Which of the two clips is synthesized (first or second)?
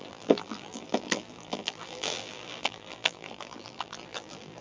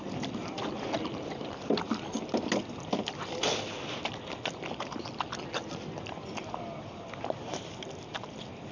first